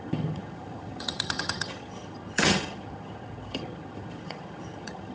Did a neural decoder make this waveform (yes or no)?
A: yes